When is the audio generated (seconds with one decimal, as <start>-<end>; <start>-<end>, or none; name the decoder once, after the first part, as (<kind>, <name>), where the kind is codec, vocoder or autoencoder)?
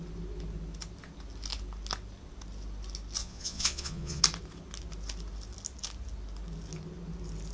3.2-4.2 (vocoder, Vocos)